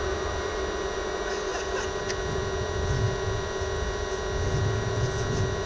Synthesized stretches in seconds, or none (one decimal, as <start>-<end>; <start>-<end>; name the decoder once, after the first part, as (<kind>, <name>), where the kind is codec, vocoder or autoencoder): none